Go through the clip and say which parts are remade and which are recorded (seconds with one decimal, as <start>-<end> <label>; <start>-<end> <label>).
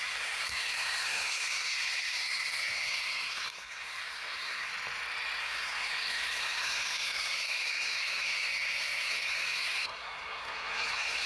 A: 0.0-4.7 remade; 4.7-5.4 recorded; 5.4-11.3 remade